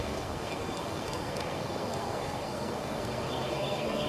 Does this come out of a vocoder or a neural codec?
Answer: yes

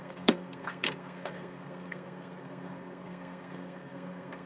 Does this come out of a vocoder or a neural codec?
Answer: yes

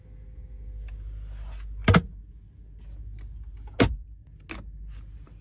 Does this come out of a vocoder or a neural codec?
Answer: no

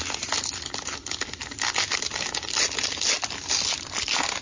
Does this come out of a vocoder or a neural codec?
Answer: no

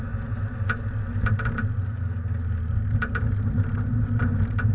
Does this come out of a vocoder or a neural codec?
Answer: no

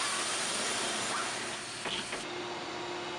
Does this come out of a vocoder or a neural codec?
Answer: no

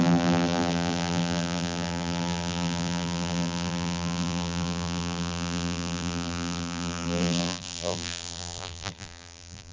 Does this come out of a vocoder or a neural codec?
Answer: yes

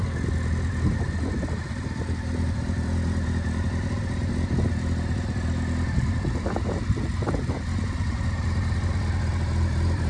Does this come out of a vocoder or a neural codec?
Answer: no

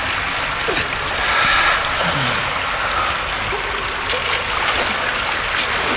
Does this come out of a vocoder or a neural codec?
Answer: no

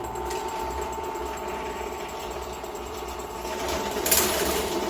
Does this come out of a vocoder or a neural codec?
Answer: yes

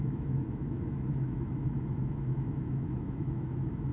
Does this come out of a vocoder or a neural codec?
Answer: yes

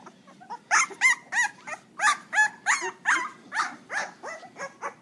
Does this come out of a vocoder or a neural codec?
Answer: no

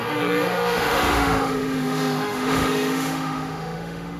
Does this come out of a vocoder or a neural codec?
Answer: yes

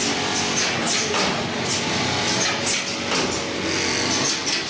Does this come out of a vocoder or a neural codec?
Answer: no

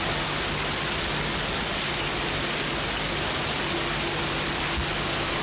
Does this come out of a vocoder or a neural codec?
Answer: no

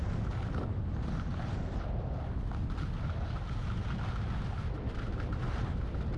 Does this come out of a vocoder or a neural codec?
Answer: no